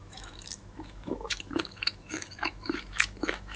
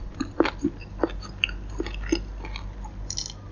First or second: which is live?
second